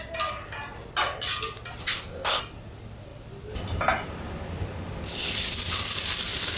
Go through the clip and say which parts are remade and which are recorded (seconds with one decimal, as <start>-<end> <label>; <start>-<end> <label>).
0.0-1.8 recorded; 1.8-2.4 remade; 2.4-6.6 recorded